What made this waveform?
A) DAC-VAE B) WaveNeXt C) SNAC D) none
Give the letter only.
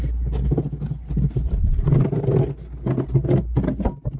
D